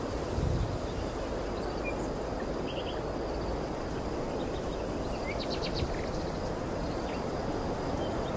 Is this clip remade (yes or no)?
no